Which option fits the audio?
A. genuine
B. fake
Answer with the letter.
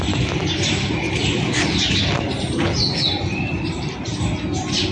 A